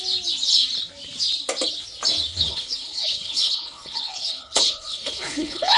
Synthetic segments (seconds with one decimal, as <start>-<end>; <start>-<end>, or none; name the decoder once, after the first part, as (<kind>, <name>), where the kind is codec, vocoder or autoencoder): 2.3-5.8 (codec, HILCodec)